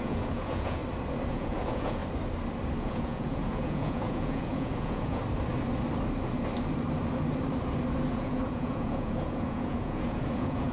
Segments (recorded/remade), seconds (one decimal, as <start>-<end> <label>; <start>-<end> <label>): 0.0-0.8 remade; 0.8-1.3 recorded; 1.3-2.0 remade; 2.0-2.8 recorded; 2.8-5.2 remade; 5.2-8.1 recorded; 8.1-10.7 remade